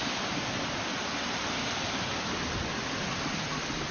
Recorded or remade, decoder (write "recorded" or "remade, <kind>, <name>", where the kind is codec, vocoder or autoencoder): recorded